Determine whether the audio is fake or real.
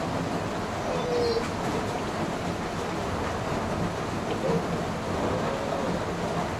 real